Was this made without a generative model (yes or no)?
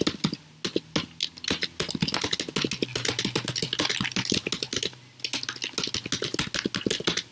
yes